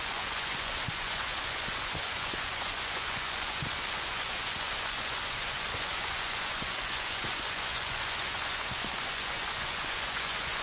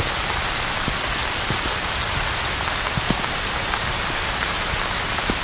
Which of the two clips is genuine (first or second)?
second